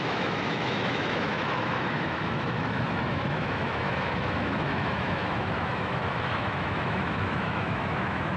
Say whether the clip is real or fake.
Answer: fake